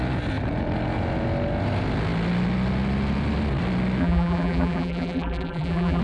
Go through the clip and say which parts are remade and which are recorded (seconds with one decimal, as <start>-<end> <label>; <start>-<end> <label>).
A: 0.0-4.0 recorded; 4.0-6.0 remade